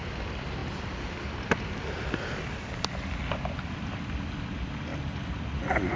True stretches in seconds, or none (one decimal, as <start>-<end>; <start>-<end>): 0.0-6.0